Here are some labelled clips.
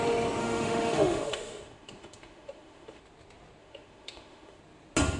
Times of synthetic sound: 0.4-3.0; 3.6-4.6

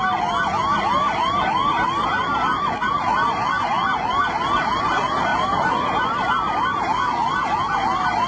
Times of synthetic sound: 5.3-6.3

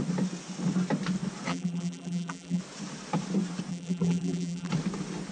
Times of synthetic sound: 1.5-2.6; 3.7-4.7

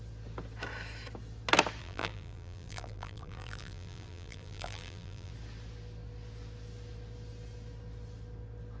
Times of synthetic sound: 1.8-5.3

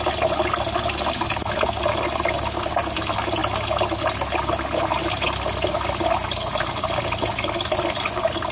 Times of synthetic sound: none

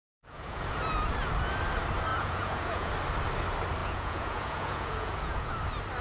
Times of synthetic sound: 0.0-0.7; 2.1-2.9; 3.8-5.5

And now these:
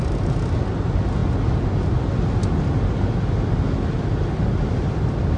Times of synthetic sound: none

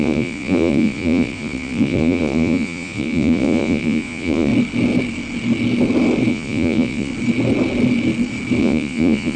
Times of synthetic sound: 0.0-4.5; 6.3-7.1; 8.6-9.4